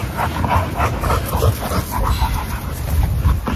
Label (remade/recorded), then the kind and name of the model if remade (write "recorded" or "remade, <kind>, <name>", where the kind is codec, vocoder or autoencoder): recorded